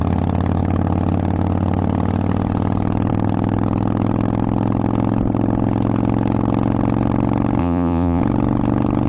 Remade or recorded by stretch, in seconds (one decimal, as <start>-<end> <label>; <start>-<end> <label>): 0.0-7.6 recorded; 7.6-8.2 remade; 8.2-9.1 recorded